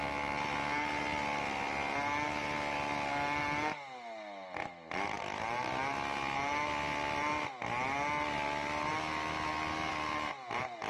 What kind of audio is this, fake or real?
real